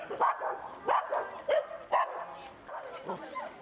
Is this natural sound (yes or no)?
yes